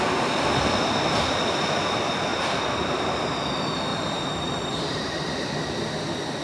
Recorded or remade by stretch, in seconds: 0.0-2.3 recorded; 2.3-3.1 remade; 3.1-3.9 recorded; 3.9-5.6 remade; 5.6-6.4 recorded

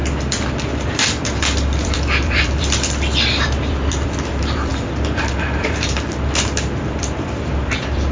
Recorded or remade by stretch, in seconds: 0.0-0.9 recorded; 0.9-8.1 remade

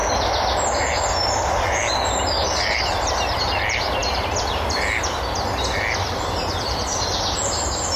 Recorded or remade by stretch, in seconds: 0.0-8.0 recorded

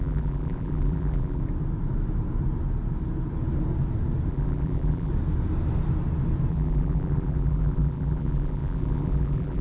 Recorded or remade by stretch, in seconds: 0.0-1.4 remade; 1.4-4.3 recorded; 4.3-5.1 remade; 5.1-6.5 recorded; 6.5-9.6 remade

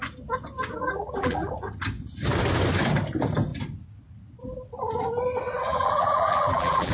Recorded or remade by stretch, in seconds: 0.0-0.8 recorded; 0.8-1.5 remade; 1.5-5.7 recorded; 5.7-6.9 remade

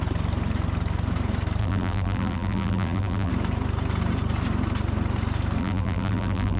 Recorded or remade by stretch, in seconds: 0.0-1.6 recorded; 1.6-3.3 remade; 3.3-5.6 recorded; 5.6-6.6 remade

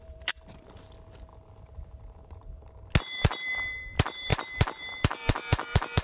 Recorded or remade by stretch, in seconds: 0.0-1.3 remade; 1.3-3.0 recorded; 3.0-6.0 remade